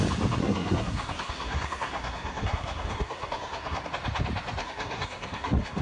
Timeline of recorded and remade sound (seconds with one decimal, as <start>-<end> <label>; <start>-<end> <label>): 0.0-0.4 recorded; 0.4-3.9 remade; 3.9-4.6 recorded; 4.6-5.8 remade